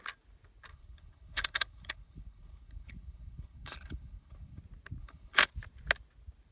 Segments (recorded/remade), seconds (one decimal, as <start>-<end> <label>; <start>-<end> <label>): 0.0-0.7 recorded; 0.7-4.6 remade; 4.6-5.0 recorded; 5.0-5.5 remade; 5.5-6.5 recorded